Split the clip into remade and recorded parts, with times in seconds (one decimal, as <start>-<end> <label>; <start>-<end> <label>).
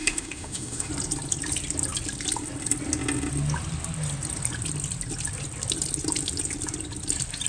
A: 0.0-0.9 remade; 0.9-7.5 recorded